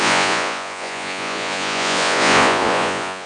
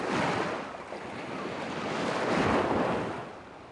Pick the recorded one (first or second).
second